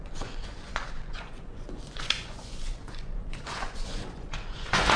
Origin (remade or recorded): remade